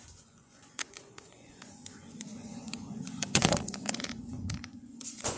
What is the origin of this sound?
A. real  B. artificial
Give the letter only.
B